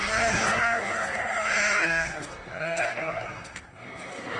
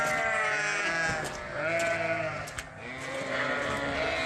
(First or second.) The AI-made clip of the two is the first